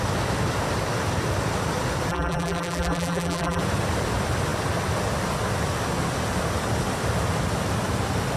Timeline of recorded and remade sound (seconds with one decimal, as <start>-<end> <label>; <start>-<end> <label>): 0.0-2.1 recorded; 2.1-3.6 remade; 3.6-8.4 recorded